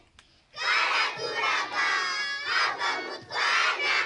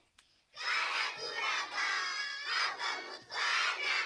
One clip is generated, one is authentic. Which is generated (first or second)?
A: second